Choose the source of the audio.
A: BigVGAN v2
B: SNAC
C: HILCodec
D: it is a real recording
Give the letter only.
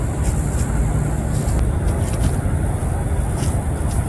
D